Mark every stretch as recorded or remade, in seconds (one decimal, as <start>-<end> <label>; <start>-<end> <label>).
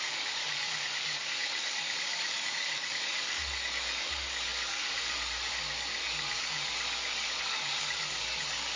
0.0-8.8 remade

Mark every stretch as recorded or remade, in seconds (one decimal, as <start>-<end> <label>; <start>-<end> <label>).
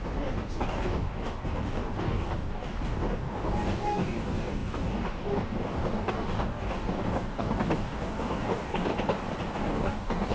0.0-8.9 remade; 8.9-9.5 recorded; 9.5-10.3 remade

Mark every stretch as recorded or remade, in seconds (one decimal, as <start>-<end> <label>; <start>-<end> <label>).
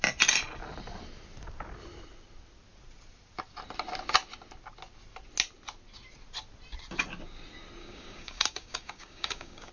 0.0-7.8 recorded; 7.8-9.7 remade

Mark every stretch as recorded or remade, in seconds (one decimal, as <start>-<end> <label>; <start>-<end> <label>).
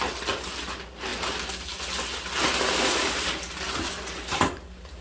0.0-5.0 recorded